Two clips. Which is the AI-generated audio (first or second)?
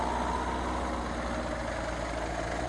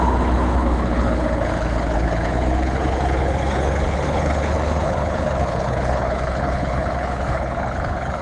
second